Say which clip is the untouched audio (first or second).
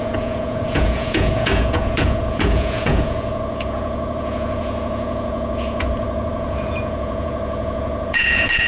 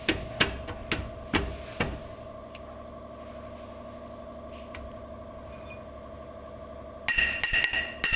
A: second